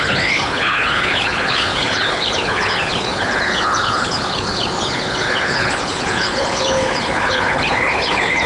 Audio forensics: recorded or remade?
remade